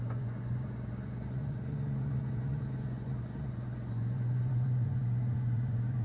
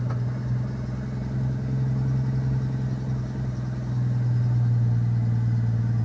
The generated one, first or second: first